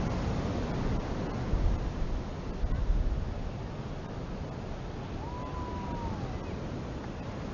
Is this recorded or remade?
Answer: recorded